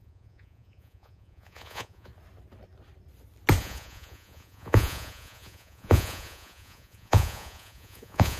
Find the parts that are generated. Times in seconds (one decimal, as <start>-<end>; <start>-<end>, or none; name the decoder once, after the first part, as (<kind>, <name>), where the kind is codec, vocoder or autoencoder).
0.0-2.1 (vocoder, Vocos); 3.6-8.4